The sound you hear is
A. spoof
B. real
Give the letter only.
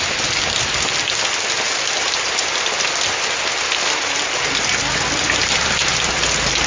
B